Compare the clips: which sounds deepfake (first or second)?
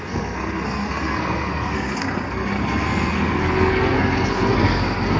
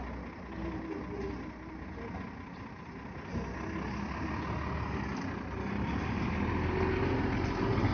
first